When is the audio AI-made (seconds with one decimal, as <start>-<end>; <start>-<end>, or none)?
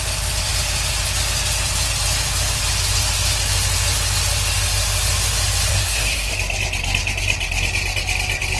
5.7-6.3